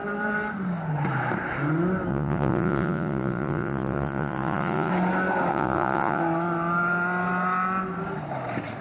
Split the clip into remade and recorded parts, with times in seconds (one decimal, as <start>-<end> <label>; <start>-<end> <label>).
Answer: 0.0-2.1 recorded; 2.1-4.9 remade; 4.9-5.5 recorded; 5.5-6.2 remade; 6.2-8.8 recorded